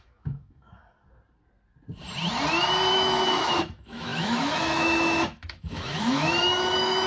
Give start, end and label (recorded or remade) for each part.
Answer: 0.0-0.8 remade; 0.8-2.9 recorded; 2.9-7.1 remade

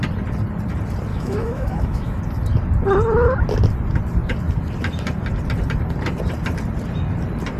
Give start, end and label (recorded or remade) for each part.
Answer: 0.0-1.1 recorded; 1.1-2.2 remade; 2.2-7.6 recorded

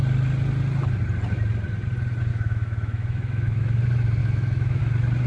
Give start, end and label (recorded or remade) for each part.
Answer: 0.0-2.3 recorded; 2.3-3.8 remade; 3.8-4.2 recorded; 4.2-4.8 remade; 4.8-5.3 recorded

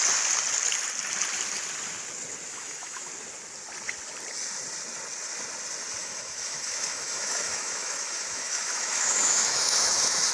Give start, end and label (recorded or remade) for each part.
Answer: 0.0-2.5 recorded; 2.5-3.1 remade; 3.1-6.0 recorded; 6.0-10.3 remade

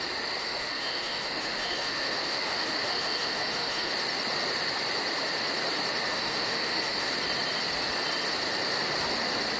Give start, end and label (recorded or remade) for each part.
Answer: 0.0-0.4 recorded; 0.4-3.9 remade; 3.9-6.1 recorded; 6.1-7.1 remade; 7.1-9.6 recorded

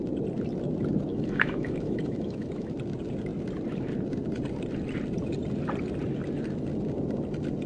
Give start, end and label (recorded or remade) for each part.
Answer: 0.0-1.1 recorded; 1.1-2.7 remade; 2.7-7.7 recorded